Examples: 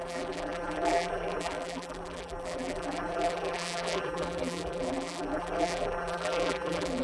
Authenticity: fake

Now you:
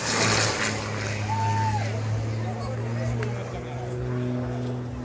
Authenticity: real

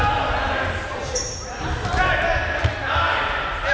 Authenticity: real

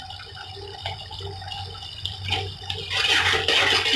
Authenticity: real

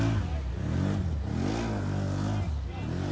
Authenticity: real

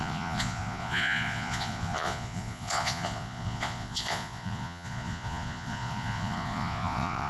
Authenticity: fake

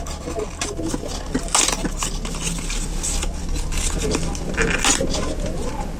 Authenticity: real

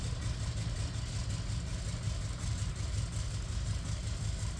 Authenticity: real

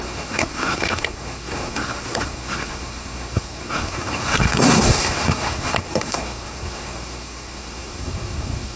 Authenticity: fake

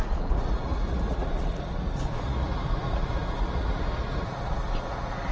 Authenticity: fake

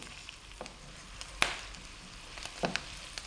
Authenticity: real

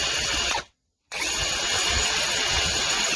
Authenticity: fake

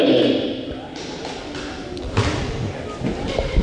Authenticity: real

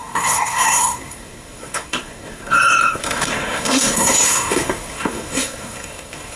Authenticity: fake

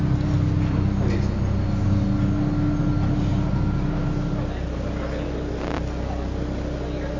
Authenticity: real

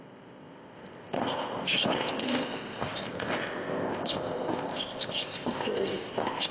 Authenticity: fake